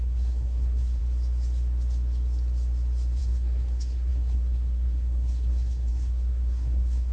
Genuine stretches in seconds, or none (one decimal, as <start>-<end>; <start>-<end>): 1.0-3.2